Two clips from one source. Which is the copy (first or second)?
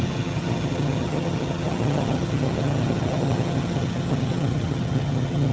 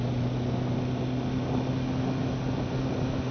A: first